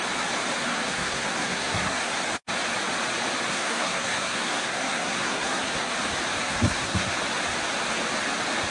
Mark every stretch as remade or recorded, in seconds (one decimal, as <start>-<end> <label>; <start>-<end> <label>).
0.0-0.7 recorded; 0.7-2.2 remade; 2.2-3.5 recorded; 3.5-5.9 remade; 5.9-6.4 recorded; 6.4-7.1 remade; 7.1-8.7 recorded